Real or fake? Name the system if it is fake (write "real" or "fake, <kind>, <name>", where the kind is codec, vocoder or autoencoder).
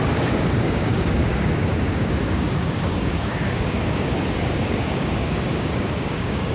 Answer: fake, codec, DAC